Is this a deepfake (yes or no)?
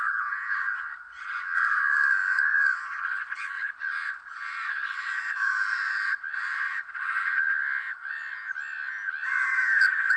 no